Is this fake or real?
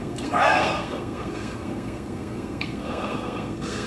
fake